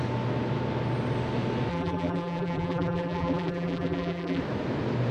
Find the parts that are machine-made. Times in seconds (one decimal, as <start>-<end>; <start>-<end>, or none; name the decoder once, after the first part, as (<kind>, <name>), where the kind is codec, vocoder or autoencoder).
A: 1.7-4.4 (vocoder, BigVGAN v2)